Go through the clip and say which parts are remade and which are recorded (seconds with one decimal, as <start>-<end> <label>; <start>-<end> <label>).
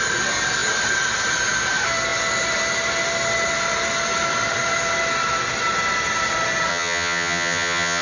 0.0-6.7 recorded; 6.7-8.0 remade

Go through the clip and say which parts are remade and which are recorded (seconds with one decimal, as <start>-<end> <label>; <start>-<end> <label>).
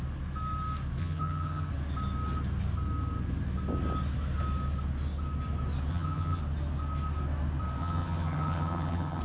0.0-1.0 recorded; 1.0-1.7 remade; 1.7-5.9 recorded; 5.9-6.4 remade; 6.4-7.8 recorded; 7.8-9.2 remade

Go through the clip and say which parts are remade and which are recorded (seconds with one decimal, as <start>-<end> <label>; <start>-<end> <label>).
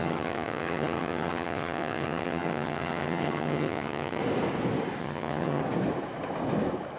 0.0-4.2 remade; 4.2-5.0 recorded; 5.0-5.6 remade; 5.6-7.0 recorded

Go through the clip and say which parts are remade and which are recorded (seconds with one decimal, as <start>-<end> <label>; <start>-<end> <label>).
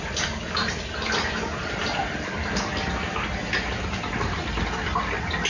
0.0-5.5 recorded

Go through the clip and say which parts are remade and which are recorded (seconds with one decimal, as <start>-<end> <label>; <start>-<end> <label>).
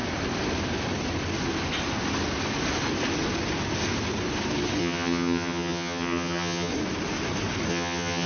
0.0-4.8 recorded; 4.8-6.7 remade; 6.7-7.7 recorded; 7.7-8.3 remade